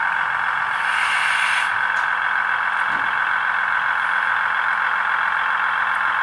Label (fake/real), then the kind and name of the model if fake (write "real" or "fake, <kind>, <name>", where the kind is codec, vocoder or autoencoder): real